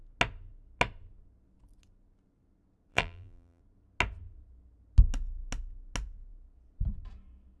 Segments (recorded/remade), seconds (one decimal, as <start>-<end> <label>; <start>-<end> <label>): 0.0-2.9 recorded; 2.9-3.6 remade; 3.6-7.6 recorded